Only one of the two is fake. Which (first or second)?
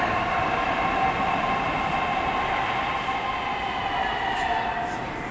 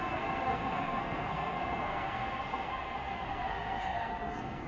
second